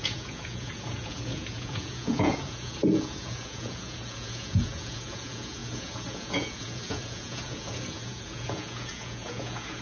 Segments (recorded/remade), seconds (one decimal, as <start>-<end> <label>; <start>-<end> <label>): 0.0-9.8 remade